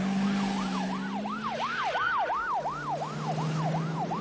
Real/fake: real